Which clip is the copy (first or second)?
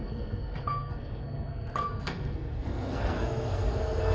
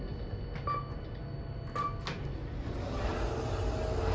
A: first